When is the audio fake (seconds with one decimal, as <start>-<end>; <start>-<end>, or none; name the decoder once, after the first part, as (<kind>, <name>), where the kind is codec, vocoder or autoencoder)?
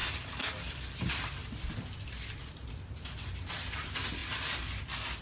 none